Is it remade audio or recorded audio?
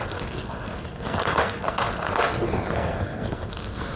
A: remade